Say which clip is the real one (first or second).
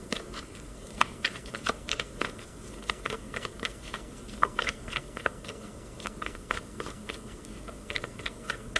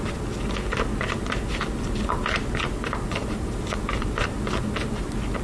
second